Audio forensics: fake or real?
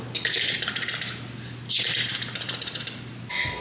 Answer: real